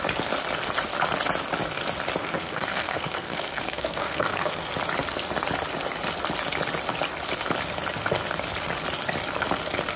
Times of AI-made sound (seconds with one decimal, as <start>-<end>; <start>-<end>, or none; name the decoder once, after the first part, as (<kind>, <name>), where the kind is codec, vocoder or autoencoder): 2.2-4.7 (codec, SNAC)